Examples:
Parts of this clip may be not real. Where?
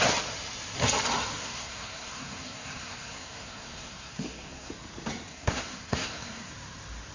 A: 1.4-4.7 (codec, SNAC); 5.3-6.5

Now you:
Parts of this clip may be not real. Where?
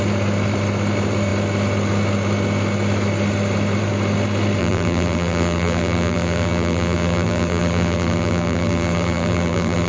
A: 4.6-9.9 (vocoder, BigVGAN v2)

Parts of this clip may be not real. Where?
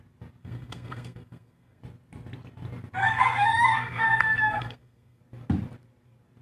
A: 0.4-1.8 (codec, SNAC); 3.0-5.2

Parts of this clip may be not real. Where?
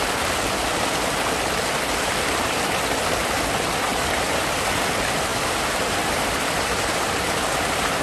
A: 3.9-4.8 (vocoder, BigVGAN v2); 5.3-8.0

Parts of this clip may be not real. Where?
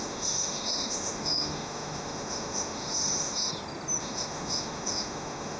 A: 0.0-3.5 (autoencoder, DAC-VAE); 4.0-5.6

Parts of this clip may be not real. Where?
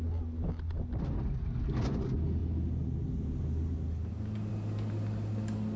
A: none